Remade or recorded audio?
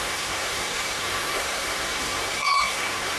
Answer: remade